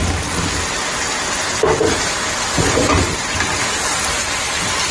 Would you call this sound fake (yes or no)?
no